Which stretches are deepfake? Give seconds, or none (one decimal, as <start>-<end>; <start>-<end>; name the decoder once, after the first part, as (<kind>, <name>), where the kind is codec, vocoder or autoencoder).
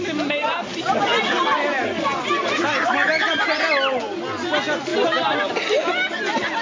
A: none